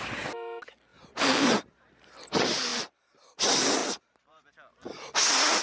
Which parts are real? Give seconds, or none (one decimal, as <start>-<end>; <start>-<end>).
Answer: 0.0-0.9; 2.2-3.8; 4.5-5.6